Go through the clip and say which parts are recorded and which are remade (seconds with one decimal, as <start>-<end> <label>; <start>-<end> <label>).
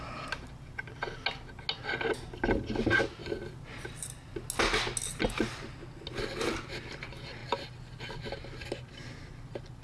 0.0-9.8 recorded